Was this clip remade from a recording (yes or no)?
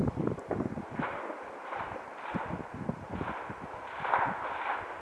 yes